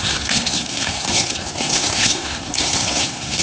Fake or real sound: fake